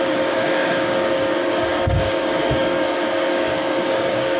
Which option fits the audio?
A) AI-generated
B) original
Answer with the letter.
A